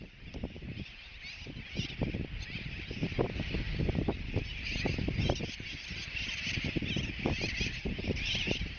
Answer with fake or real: real